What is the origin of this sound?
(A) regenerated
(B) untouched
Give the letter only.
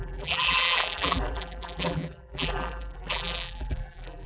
A